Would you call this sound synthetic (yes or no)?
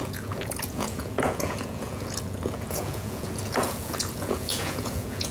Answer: yes